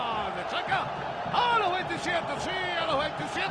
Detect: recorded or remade recorded